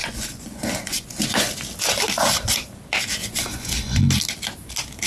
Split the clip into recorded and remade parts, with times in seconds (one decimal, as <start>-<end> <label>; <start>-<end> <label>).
0.0-1.5 remade; 1.5-3.2 recorded; 3.2-4.0 remade; 4.0-5.1 recorded